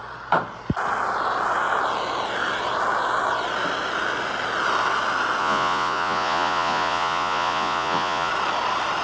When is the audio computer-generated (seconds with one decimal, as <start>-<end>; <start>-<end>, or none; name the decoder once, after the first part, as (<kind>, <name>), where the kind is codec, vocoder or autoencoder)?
5.4-8.3 (vocoder, Vocos)